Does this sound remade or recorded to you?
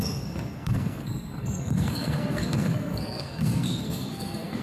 remade